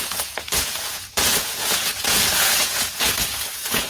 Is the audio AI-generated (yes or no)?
yes